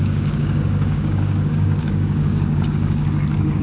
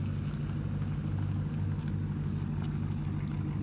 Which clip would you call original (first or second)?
second